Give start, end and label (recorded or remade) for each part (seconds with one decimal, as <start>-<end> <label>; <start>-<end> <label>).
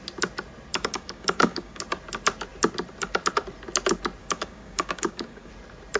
0.0-0.7 recorded; 0.7-1.8 remade; 1.8-4.2 recorded; 4.2-5.5 remade; 5.5-6.0 recorded